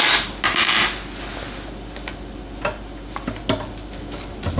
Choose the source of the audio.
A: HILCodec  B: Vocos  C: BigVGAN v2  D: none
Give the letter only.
D